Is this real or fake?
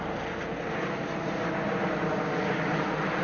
real